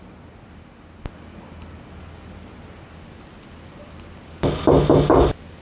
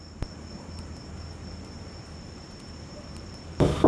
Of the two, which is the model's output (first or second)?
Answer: second